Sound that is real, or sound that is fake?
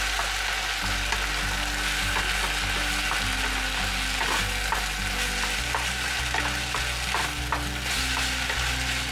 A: real